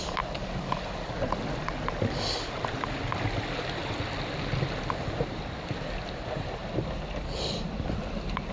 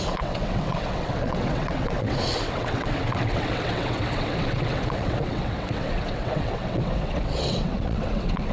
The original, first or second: first